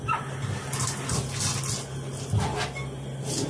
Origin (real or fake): real